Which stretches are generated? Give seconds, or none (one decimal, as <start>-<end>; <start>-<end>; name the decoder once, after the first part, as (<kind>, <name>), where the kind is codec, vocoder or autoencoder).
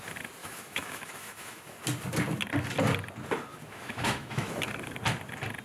0.4-1.8 (autoencoder, DAC-VAE); 3.6-4.6